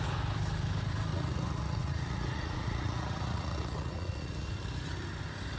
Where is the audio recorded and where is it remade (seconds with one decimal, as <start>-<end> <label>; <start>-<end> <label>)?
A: 0.0-1.1 recorded; 1.1-4.5 remade; 4.5-5.6 recorded